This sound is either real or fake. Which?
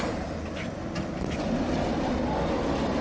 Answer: real